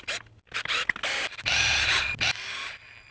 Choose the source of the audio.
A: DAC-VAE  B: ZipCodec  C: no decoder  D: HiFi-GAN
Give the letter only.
C